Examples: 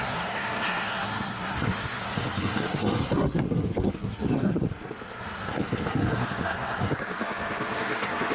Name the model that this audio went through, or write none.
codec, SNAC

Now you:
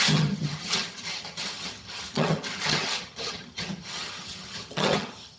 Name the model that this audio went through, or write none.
vocoder, HiFi-GAN